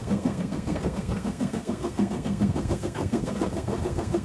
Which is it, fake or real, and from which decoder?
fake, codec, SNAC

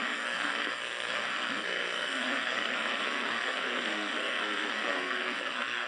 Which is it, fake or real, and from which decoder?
fake, codec, SNAC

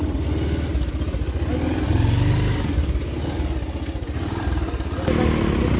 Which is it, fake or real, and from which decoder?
real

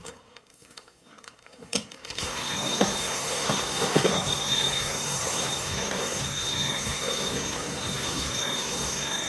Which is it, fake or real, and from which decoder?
fake, codec, SNAC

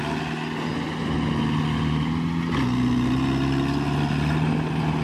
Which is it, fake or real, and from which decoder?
real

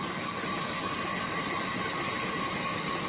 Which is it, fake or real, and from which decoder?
real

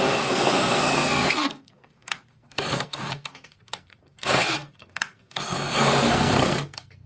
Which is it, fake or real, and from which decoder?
fake, codec, SNAC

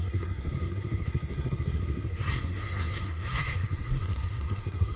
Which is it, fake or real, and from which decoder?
fake, codec, SNAC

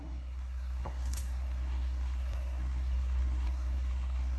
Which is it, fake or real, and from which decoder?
fake, codec, SNAC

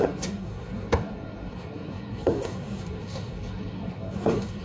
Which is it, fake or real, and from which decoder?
fake, codec, SNAC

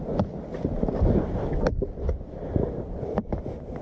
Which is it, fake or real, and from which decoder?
real